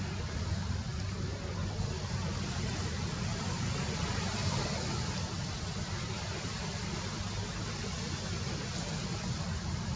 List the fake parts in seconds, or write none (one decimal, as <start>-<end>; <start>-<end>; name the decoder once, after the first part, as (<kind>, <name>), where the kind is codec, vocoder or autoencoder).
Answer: none